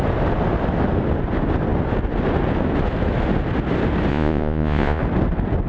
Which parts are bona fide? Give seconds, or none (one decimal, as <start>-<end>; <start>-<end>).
0.0-4.1; 5.0-5.7